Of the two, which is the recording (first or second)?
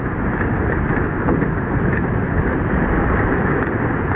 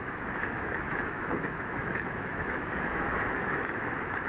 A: first